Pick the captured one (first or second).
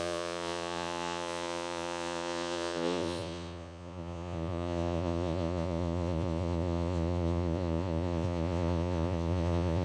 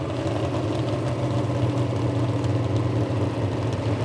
second